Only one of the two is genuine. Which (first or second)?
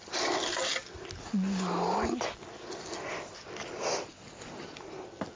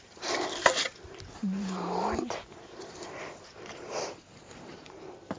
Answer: first